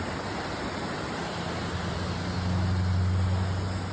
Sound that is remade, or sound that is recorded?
recorded